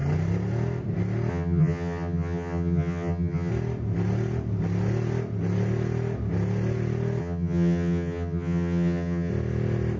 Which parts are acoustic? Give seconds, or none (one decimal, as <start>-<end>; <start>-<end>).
0.0-1.3; 3.5-7.2; 9.3-10.0